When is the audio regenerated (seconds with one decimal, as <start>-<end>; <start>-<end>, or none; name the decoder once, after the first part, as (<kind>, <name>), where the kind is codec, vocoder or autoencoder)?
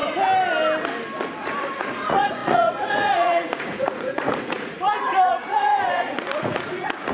1.4-7.1 (vocoder, Vocos)